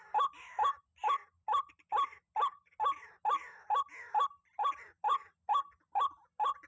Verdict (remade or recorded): recorded